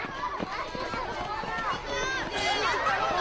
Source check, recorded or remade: recorded